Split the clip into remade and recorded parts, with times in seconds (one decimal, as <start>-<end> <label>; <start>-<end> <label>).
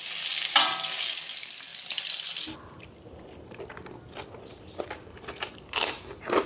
0.0-1.7 recorded; 1.7-5.5 remade; 5.5-6.5 recorded